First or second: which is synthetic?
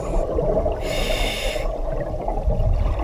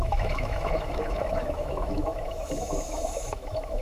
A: second